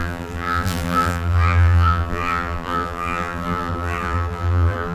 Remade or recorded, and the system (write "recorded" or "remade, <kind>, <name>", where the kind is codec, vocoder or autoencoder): remade, vocoder, BigVGAN v2